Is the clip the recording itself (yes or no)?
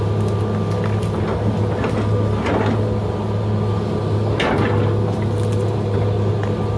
yes